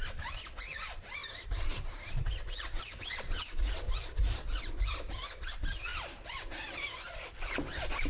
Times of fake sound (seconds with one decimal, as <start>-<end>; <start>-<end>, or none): 1.2-2.3